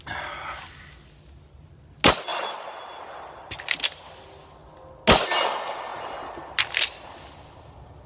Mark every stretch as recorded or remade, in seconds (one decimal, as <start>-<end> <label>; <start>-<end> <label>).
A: 0.0-8.1 recorded